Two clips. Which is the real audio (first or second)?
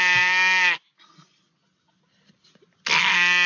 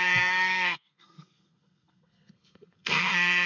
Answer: first